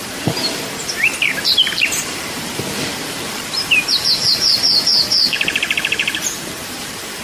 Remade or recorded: remade